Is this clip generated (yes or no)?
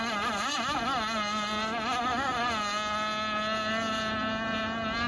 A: no